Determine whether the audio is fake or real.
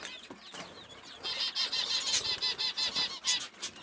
real